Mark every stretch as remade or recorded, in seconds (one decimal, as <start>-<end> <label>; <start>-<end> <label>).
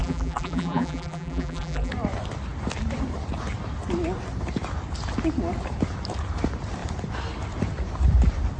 0.0-1.9 remade; 1.9-8.6 recorded